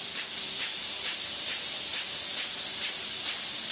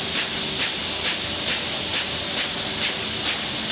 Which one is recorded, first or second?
second